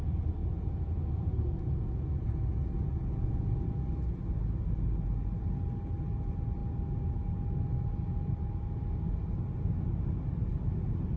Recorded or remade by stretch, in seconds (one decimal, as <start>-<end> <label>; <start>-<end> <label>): 0.0-0.4 recorded; 0.4-3.6 remade; 3.6-11.2 recorded